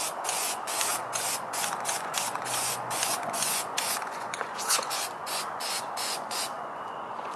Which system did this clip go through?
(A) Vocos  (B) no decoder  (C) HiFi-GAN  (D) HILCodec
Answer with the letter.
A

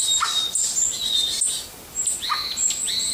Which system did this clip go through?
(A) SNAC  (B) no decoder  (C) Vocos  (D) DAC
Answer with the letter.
B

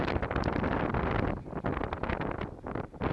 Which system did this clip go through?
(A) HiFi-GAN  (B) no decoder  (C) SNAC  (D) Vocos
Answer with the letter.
B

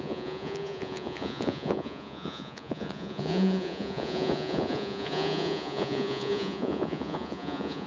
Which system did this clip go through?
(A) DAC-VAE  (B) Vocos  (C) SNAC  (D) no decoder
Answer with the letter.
B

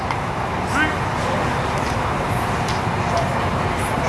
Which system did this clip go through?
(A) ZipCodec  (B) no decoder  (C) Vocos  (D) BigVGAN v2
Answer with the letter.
B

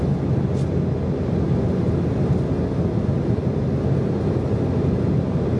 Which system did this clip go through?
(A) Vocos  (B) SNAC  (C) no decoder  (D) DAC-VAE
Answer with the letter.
C